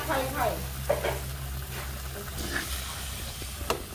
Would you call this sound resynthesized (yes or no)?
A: no